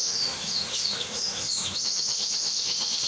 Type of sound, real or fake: fake